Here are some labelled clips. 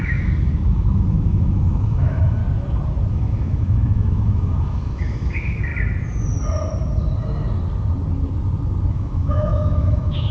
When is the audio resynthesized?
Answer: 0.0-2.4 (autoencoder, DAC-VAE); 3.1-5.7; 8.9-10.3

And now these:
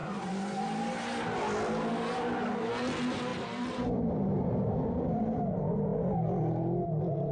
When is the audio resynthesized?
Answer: 0.0-0.8 (vocoder, BigVGAN v2); 3.3-5.2